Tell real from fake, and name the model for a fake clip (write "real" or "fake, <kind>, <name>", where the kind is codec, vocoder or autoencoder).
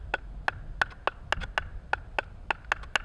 real